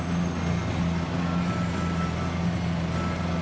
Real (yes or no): yes